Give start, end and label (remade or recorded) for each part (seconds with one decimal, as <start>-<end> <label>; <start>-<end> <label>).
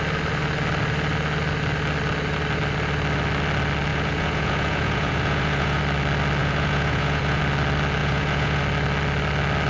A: 0.0-3.9 recorded; 3.9-5.8 remade; 5.8-6.4 recorded; 6.4-7.4 remade; 7.4-8.0 recorded; 8.0-8.6 remade; 8.6-9.7 recorded